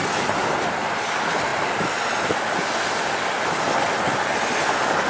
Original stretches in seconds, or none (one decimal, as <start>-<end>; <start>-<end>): 0.0-5.1